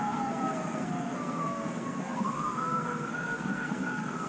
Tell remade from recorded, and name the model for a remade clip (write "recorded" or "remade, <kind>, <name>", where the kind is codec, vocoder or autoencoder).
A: remade, codec, SNAC